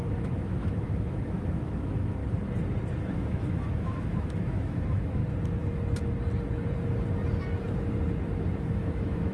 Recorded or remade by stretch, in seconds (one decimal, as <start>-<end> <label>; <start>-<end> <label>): 0.0-2.2 remade; 2.2-3.0 recorded; 3.0-5.2 remade; 5.2-8.6 recorded; 8.6-9.3 remade